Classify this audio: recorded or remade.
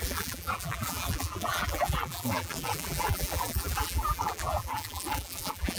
remade